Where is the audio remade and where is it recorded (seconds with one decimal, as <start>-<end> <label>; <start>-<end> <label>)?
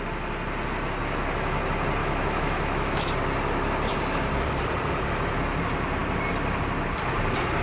0.0-2.0 recorded; 2.0-3.1 remade; 3.1-7.6 recorded